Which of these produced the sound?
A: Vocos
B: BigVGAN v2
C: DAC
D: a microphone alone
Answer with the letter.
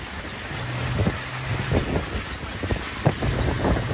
D